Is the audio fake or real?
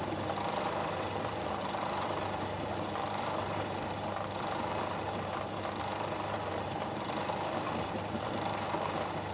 fake